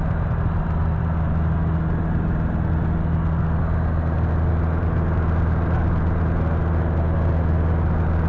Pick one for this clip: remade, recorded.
recorded